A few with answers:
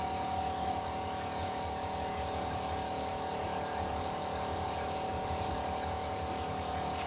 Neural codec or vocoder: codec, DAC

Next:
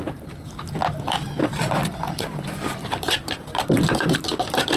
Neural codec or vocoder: vocoder, BigVGAN v2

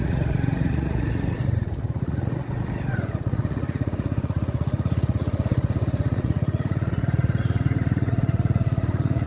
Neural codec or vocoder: vocoder, Vocos